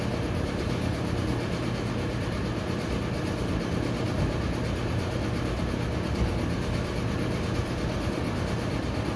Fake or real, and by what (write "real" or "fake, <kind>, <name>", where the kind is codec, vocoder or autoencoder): real